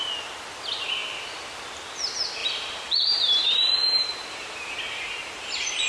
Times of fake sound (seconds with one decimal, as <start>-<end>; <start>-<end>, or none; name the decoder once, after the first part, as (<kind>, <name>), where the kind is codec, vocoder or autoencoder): 2.4-5.9 (vocoder, BigVGAN v2)